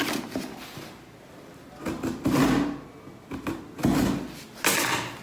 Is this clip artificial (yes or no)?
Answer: no